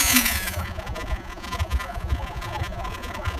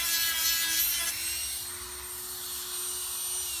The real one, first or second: second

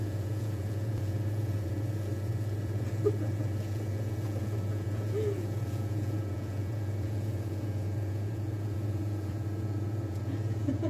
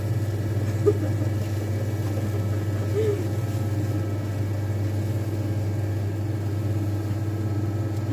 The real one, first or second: second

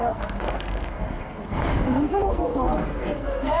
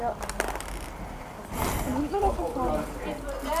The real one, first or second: second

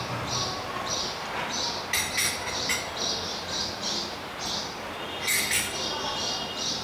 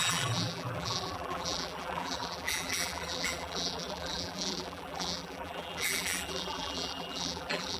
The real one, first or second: first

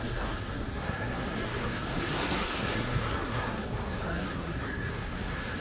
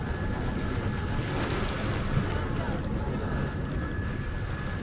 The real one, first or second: second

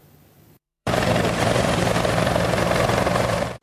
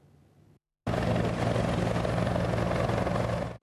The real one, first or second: second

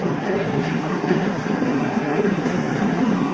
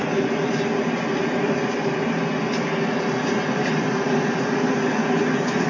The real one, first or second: second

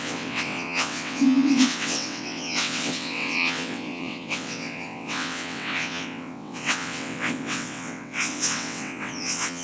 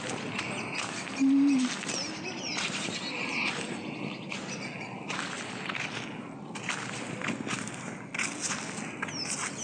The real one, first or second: second